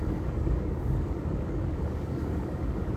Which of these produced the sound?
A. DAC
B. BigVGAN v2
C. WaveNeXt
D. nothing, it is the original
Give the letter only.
A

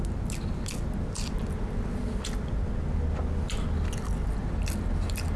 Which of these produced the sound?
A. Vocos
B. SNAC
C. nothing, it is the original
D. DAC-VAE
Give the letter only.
C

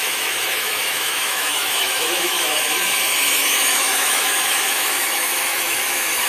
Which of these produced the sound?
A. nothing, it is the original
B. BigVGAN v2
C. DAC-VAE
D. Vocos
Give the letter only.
C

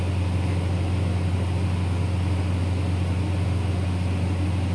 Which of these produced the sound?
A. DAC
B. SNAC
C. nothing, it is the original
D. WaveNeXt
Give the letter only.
C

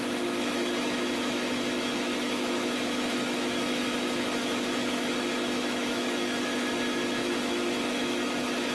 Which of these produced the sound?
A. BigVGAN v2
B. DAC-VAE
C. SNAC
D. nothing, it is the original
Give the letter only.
B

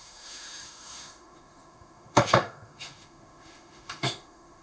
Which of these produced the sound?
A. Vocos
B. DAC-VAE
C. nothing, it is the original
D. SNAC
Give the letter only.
B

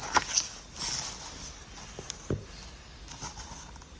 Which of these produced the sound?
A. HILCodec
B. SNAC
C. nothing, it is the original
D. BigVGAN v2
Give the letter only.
C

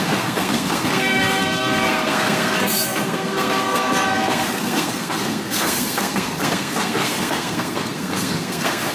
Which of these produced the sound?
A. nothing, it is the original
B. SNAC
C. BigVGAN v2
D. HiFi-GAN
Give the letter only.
B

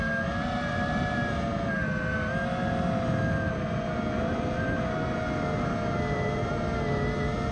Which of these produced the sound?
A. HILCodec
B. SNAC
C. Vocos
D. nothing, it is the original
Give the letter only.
D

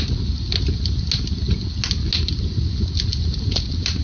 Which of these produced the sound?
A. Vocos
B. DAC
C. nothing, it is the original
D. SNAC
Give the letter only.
C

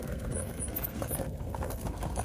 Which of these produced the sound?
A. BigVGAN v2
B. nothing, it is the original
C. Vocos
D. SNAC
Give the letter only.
D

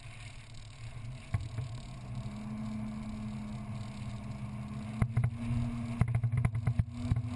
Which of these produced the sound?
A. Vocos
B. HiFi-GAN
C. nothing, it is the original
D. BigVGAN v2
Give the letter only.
C